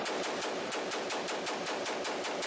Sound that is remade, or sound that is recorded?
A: recorded